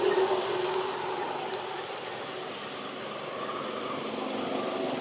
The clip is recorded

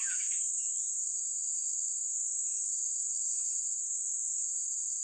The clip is remade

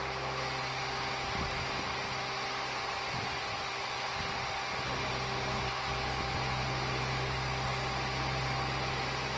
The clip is recorded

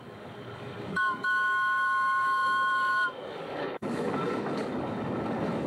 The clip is remade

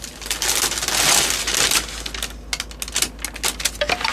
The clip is recorded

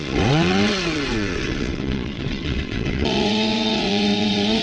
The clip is remade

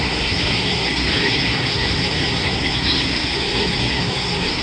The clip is remade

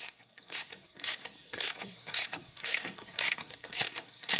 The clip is remade